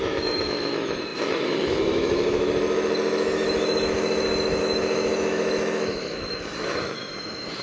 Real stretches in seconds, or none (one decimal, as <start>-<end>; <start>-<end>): none